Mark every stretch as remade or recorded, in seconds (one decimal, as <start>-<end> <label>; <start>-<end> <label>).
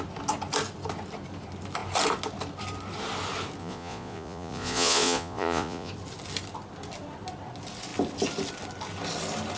0.0-3.6 recorded; 3.6-5.9 remade; 5.9-9.6 recorded